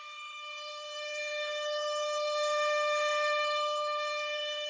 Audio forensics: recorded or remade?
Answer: remade